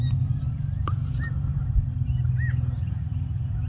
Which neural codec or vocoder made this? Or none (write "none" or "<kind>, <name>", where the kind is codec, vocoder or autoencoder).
none